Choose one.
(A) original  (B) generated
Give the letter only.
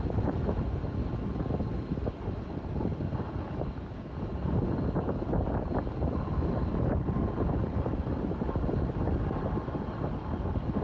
A